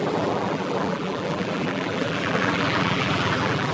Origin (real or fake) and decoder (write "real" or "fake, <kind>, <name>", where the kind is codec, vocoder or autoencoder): fake, vocoder, BigVGAN v2